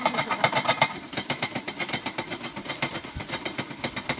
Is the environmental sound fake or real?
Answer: real